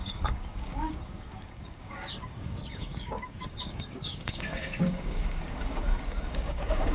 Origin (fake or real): fake